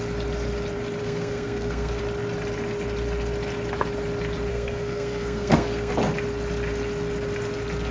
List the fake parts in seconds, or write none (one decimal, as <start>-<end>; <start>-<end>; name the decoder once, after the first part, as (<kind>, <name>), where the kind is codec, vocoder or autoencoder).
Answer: 1.0-2.0 (codec, SNAC); 4.5-5.9